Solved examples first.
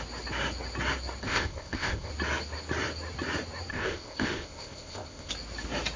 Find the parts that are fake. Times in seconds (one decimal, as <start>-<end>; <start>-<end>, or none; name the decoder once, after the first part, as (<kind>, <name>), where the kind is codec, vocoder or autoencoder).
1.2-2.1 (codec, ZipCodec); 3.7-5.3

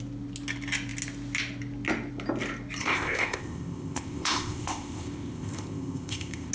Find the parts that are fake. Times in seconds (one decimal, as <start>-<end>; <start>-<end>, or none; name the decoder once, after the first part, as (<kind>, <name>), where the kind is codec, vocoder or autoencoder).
2.8-6.5 (codec, ZipCodec)

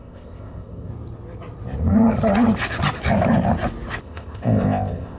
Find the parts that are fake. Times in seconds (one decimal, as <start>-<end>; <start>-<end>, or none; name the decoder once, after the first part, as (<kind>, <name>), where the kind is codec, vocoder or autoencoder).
0.0-0.9 (codec, ZipCodec); 4.0-5.2

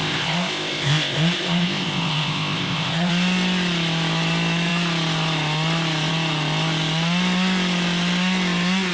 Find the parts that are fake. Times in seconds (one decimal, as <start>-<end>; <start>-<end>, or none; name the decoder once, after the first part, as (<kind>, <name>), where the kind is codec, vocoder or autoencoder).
0.0-3.1 (codec, ZipCodec)

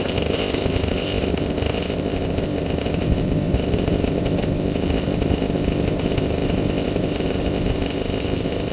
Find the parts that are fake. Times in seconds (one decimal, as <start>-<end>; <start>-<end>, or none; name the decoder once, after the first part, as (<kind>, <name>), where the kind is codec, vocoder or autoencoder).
0.0-8.7 (codec, ZipCodec)

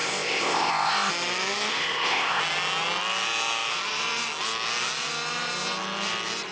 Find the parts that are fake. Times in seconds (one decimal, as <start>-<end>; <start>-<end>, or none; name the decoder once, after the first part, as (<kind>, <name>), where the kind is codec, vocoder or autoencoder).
0.0-1.1 (codec, ZipCodec); 1.7-2.4